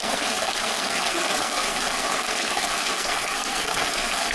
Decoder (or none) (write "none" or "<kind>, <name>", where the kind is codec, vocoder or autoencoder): codec, SNAC